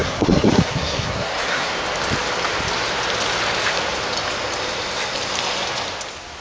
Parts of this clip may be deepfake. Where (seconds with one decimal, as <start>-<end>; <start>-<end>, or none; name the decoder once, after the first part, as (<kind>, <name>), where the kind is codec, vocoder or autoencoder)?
0.0-1.7 (codec, SNAC)